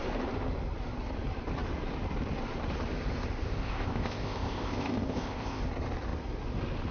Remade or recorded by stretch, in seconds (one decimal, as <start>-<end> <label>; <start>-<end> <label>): 0.0-3.4 recorded; 3.4-5.6 remade; 5.6-6.9 recorded

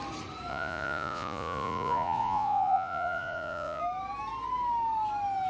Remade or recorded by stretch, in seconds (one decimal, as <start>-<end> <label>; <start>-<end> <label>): 0.0-0.5 recorded; 0.5-3.8 remade; 3.8-5.5 recorded

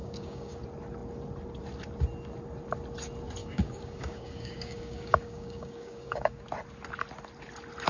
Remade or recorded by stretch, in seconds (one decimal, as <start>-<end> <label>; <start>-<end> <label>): 0.0-0.6 remade; 0.6-3.4 recorded; 3.4-6.4 remade; 6.4-7.9 recorded